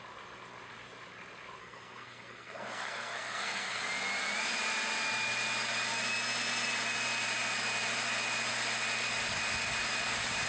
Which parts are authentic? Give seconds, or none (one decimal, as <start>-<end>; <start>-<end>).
0.0-1.6; 3.8-10.5